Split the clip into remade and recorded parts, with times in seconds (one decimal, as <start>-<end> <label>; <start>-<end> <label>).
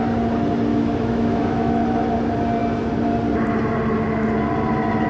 0.0-0.7 recorded; 0.7-1.8 remade; 1.8-5.1 recorded